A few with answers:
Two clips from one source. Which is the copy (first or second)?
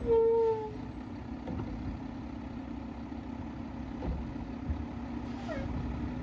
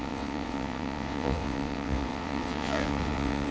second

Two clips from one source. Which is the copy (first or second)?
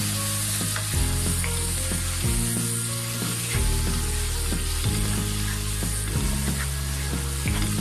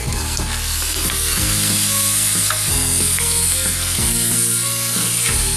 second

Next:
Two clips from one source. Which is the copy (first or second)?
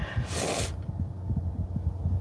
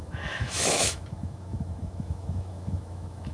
second